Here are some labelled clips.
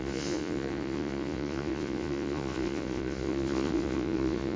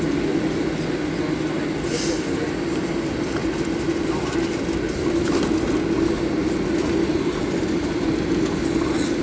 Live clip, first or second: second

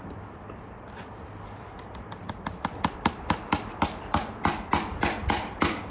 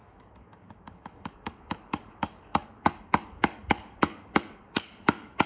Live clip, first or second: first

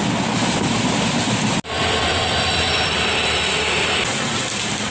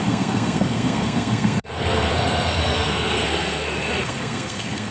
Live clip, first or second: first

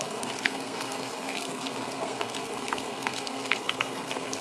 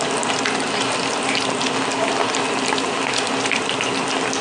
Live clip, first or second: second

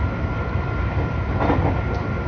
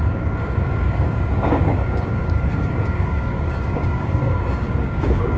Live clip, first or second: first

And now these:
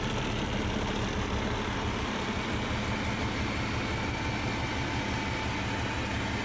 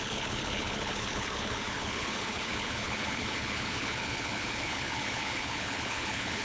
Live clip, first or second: first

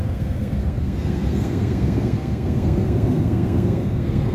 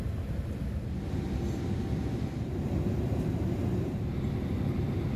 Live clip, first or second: second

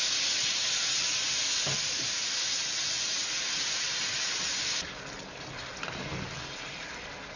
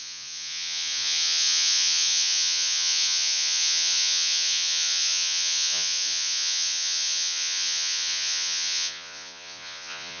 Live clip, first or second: first